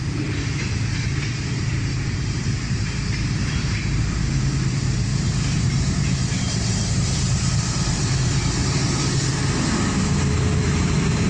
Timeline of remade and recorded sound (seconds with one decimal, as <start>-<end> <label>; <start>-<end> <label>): 0.0-5.1 remade; 5.1-5.7 recorded; 5.7-8.8 remade; 8.8-9.9 recorded; 9.9-11.3 remade